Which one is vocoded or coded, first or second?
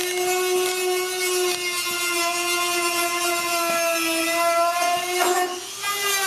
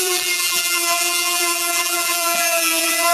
second